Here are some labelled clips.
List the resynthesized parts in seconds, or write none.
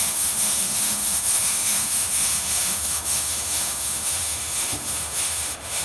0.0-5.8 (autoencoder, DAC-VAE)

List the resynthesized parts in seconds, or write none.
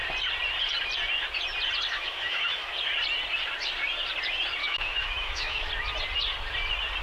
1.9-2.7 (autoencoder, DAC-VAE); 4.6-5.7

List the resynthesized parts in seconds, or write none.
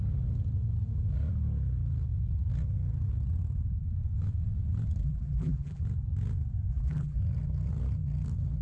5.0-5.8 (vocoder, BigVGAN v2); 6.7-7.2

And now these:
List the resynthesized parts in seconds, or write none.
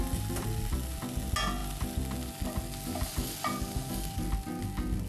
none